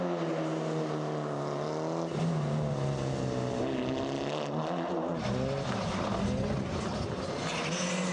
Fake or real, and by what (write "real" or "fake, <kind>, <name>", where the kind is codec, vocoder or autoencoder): real